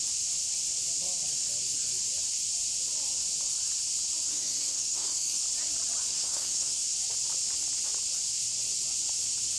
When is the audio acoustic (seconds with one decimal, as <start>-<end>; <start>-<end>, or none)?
0.0-4.3; 5.4-6.1; 6.8-9.6